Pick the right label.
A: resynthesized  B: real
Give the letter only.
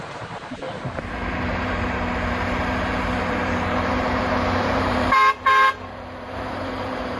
A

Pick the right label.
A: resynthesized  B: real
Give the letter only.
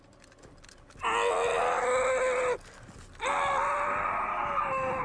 B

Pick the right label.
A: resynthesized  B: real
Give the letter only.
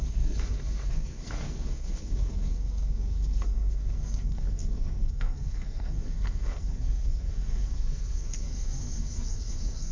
A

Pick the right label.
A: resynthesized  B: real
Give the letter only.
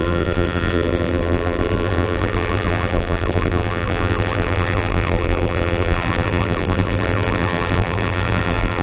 A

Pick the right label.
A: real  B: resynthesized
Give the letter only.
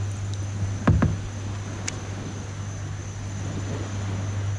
A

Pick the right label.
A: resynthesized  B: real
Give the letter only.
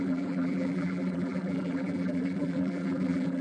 A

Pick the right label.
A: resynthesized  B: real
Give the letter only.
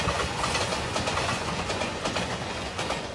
A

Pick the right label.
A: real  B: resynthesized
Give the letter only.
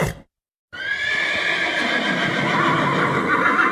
A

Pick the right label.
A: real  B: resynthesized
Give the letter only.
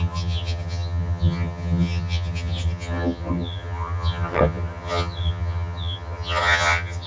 B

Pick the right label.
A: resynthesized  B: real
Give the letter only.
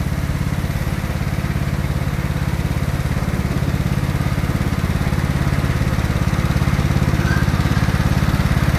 B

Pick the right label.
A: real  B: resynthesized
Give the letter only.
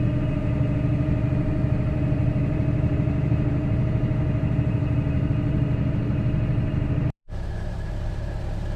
B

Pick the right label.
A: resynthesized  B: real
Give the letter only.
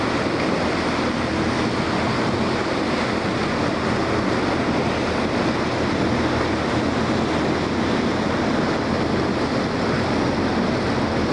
B